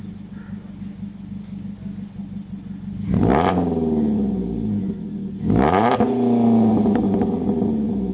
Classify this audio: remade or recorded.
recorded